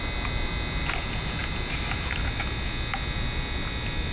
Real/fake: real